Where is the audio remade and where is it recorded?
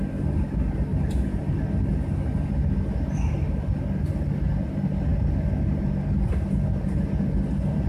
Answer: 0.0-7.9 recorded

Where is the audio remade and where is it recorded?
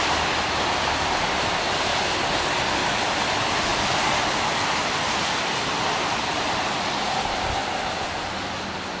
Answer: 0.0-1.9 remade; 1.9-2.4 recorded; 2.4-3.7 remade; 3.7-4.6 recorded; 4.6-7.6 remade; 7.6-8.4 recorded; 8.4-9.0 remade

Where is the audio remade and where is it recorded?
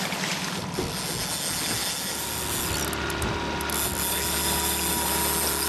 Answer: 0.0-5.7 recorded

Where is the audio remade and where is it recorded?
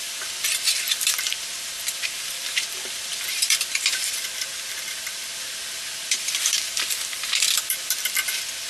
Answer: 0.0-8.7 remade